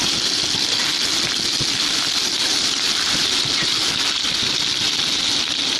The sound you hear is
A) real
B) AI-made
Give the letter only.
A